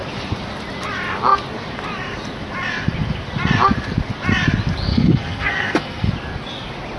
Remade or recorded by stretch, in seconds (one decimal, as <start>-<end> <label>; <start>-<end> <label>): 0.0-4.9 recorded; 4.9-6.1 remade; 6.1-7.0 recorded